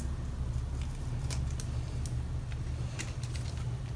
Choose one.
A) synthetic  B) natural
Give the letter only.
B